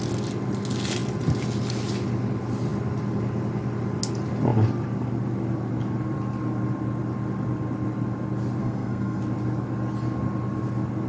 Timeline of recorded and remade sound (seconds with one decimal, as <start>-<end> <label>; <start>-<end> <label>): 0.0-8.6 recorded; 8.6-9.2 remade; 9.2-11.1 recorded